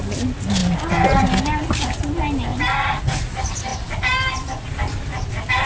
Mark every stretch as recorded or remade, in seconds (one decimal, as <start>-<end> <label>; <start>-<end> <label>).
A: 0.0-5.7 recorded